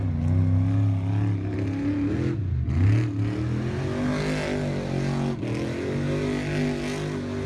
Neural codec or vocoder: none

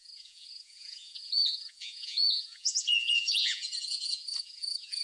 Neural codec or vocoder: vocoder, Vocos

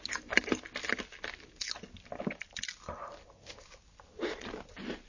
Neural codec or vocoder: none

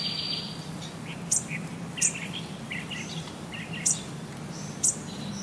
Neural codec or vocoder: none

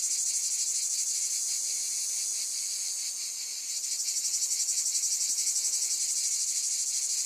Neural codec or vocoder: none